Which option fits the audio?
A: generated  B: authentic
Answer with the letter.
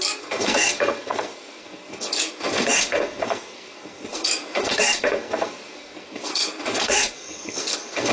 A